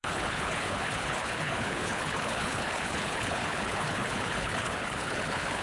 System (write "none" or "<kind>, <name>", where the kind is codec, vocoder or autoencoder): codec, HILCodec